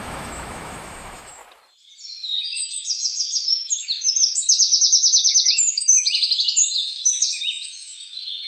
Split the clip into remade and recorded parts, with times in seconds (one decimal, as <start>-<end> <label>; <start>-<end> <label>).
0.0-1.4 remade; 1.4-2.4 recorded; 2.4-8.5 remade